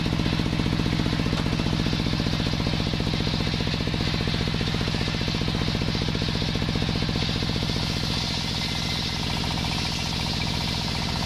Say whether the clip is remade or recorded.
recorded